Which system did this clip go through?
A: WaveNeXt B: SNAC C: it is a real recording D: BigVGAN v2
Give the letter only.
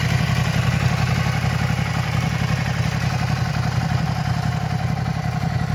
C